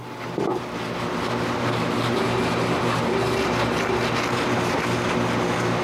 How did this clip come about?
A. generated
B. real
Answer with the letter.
B